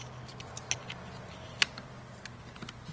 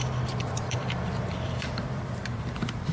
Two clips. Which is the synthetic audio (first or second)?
second